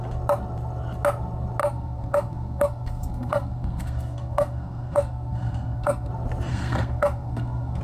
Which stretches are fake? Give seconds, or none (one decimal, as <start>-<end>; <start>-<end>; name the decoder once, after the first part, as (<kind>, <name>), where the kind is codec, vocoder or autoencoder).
1.6-6.1 (codec, SNAC); 6.5-7.8